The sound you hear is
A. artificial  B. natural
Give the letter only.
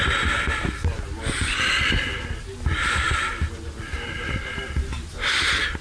B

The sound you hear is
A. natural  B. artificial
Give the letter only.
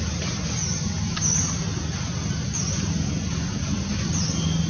A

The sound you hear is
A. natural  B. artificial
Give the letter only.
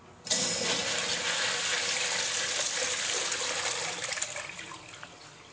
A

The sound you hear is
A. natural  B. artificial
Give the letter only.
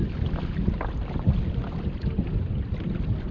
A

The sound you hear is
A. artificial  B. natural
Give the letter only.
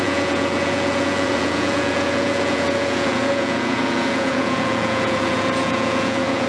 A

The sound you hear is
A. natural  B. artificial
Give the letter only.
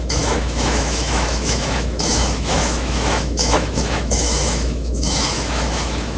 B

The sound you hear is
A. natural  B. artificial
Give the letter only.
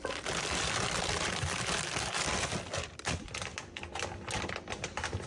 A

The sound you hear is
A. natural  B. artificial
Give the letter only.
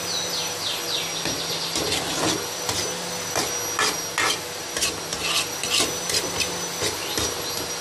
A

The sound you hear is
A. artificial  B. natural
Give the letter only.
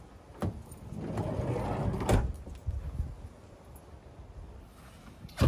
B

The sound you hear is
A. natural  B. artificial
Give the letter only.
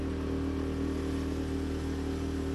A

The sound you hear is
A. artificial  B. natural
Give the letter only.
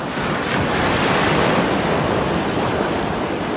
B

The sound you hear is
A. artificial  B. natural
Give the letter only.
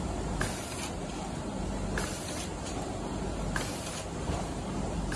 A